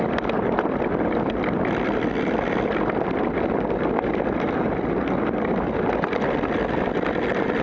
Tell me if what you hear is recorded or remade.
recorded